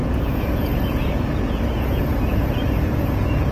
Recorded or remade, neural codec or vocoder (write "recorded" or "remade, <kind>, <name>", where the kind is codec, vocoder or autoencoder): remade, vocoder, Vocos